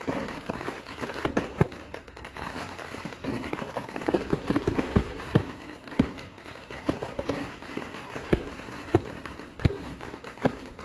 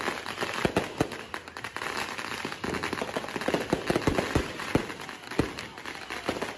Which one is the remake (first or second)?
first